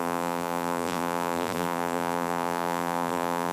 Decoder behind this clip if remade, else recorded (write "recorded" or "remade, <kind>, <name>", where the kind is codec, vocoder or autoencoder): remade, vocoder, BigVGAN v2